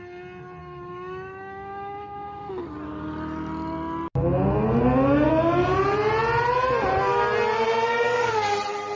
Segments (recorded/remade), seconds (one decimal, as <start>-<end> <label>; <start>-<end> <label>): 0.0-0.6 recorded; 0.6-2.5 remade; 2.5-9.0 recorded